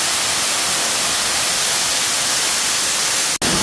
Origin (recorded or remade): recorded